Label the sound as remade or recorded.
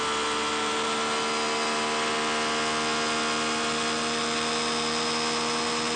recorded